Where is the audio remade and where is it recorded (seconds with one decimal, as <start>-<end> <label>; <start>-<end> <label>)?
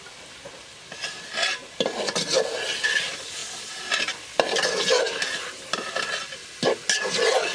0.0-7.5 recorded